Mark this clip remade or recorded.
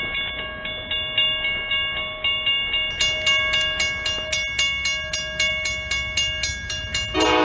recorded